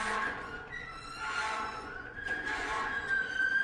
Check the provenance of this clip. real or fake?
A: fake